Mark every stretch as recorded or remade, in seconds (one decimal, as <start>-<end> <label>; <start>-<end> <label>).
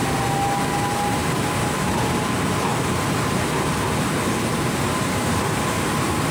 0.0-6.3 recorded